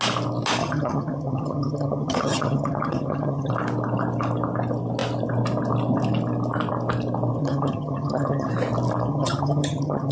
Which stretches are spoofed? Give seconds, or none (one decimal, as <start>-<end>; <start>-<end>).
0.6-3.5; 7.4-8.5; 9.1-10.1